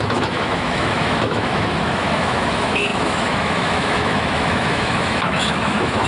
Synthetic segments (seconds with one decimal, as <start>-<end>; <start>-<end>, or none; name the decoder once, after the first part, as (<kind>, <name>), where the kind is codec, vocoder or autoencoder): 0.0-6.1 (autoencoder, DAC-VAE)